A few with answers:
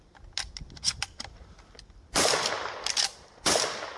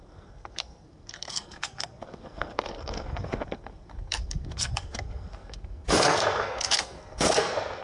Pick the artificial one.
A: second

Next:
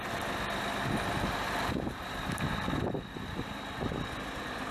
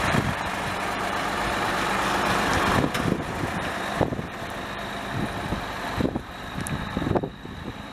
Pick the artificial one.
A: second